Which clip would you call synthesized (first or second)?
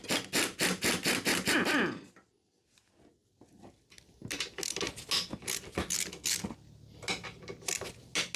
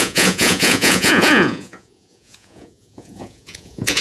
second